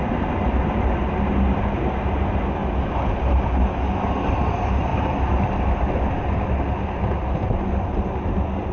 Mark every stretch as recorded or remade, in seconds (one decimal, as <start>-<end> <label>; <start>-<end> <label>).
0.0-8.7 recorded